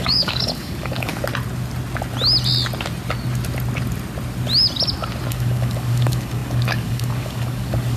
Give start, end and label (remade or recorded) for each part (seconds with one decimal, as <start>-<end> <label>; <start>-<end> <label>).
0.0-1.1 remade; 1.1-5.3 recorded; 5.3-8.0 remade